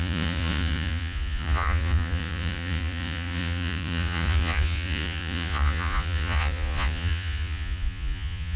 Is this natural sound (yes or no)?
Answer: no